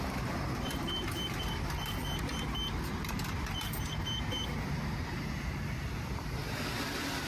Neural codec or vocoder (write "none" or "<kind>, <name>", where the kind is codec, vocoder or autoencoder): vocoder, BigVGAN v2